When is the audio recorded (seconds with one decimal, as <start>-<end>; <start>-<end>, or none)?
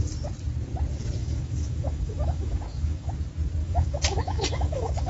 0.0-1.2; 3.1-3.6